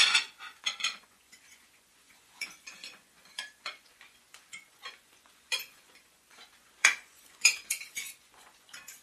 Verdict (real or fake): fake